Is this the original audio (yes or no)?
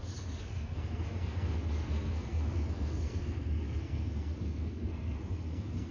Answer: no